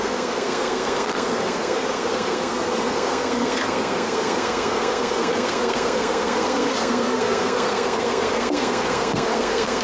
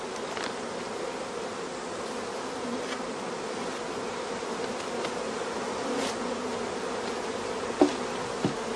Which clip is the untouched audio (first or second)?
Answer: second